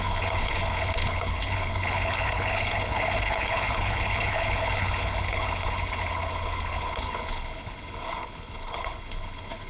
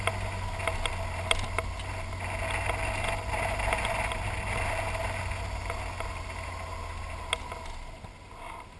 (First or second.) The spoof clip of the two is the first